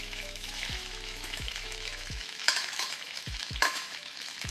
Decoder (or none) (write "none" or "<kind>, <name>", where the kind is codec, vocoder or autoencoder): autoencoder, DAC-VAE